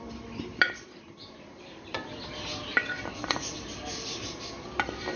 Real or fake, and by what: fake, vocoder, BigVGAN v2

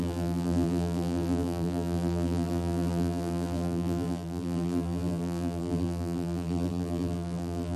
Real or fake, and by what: fake, vocoder, BigVGAN v2